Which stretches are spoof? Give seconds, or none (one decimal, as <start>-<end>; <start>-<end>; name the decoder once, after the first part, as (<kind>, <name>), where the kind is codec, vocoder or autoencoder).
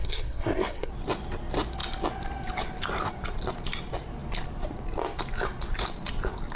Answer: 0.0-0.9 (codec, SNAC)